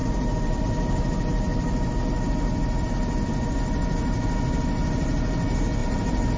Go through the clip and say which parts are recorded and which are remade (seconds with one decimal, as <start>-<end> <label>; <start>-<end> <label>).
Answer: 0.0-0.6 remade; 0.6-5.8 recorded; 5.8-6.4 remade